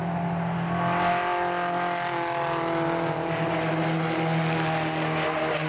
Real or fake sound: real